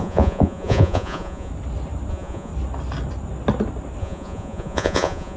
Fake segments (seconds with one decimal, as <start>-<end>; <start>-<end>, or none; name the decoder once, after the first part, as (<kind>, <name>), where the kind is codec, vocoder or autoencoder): 0.0-1.5 (vocoder, Vocos); 2.1-2.5; 4.0-5.4